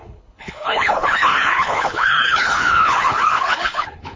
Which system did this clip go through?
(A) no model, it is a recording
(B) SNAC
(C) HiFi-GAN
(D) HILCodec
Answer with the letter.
D